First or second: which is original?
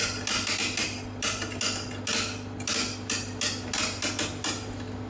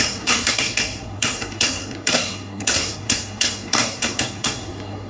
first